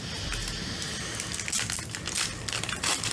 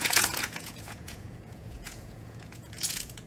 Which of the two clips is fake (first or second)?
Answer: second